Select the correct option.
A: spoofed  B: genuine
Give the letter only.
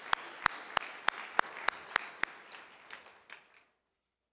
B